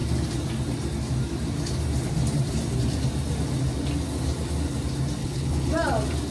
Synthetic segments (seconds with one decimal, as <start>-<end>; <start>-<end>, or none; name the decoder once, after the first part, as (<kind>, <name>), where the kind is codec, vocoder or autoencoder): 5.2-5.7 (codec, HILCodec)